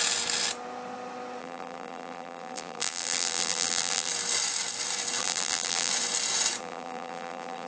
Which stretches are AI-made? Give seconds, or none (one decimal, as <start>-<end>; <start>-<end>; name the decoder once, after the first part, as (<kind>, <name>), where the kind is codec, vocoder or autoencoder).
1.4-4.1 (vocoder, BigVGAN v2); 5.2-5.9; 6.6-7.7

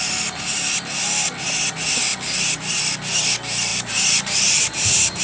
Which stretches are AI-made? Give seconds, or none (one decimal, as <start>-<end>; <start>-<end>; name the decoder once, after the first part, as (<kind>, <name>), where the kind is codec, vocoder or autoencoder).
2.1-2.8 (vocoder, BigVGAN v2); 3.7-5.2